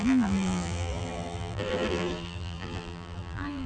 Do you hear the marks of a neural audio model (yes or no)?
yes